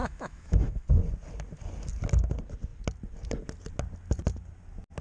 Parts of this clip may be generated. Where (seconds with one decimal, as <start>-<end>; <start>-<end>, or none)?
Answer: 0.0-1.0